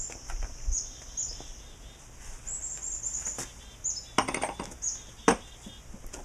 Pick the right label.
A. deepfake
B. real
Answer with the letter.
B